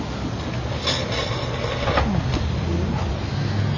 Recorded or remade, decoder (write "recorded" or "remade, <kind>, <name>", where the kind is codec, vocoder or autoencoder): recorded